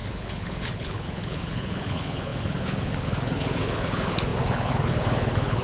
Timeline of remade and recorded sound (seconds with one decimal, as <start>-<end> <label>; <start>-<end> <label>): 0.0-5.6 remade